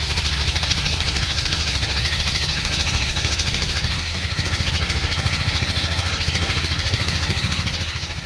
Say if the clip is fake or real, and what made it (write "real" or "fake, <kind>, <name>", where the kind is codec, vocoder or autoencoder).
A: fake, codec, SNAC